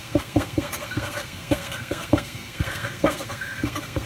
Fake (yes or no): yes